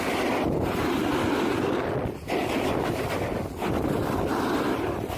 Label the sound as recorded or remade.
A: recorded